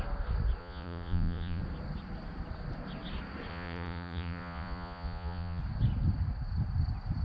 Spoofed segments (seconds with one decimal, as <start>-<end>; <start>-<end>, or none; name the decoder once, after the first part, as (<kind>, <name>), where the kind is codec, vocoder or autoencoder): 0.6-1.6 (vocoder, Vocos); 3.5-5.6